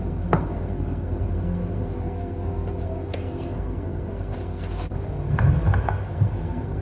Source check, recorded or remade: remade